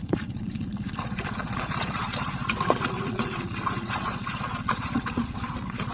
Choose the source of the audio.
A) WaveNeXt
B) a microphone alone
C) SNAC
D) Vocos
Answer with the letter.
D